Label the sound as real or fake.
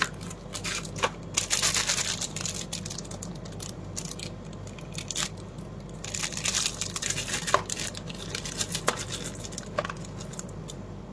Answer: real